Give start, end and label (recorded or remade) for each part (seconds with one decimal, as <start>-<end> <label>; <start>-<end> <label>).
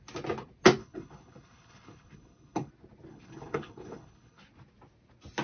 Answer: 0.0-0.8 recorded; 0.8-2.7 remade; 2.7-3.1 recorded; 3.1-4.4 remade; 4.4-5.4 recorded